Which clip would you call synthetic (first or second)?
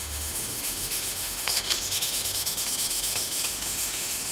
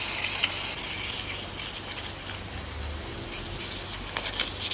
first